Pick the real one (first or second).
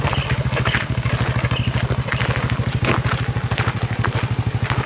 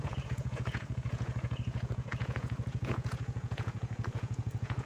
first